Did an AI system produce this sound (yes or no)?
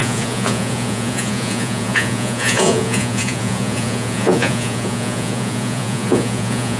yes